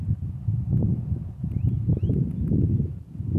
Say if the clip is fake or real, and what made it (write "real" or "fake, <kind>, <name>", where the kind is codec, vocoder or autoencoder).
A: fake, vocoder, Vocos